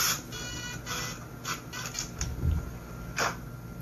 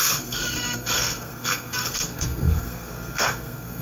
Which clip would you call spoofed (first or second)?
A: second